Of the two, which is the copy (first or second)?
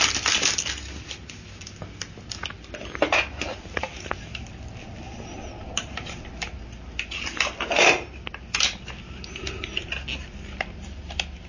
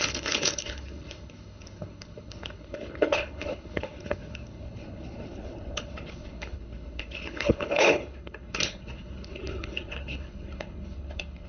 second